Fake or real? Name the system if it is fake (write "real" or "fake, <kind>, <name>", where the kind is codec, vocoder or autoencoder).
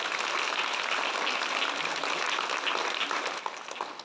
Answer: real